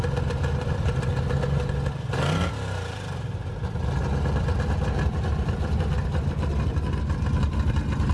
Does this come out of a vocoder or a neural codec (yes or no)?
no